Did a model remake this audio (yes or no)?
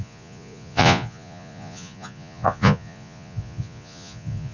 yes